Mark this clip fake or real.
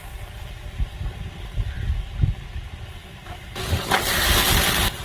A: real